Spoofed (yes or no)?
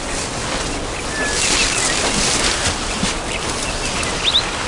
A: no